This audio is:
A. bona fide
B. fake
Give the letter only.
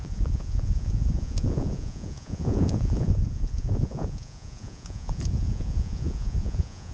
B